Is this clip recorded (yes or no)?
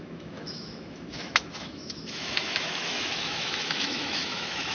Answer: no